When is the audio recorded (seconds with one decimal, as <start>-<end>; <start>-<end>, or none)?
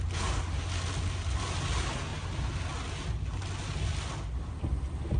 0.0-5.2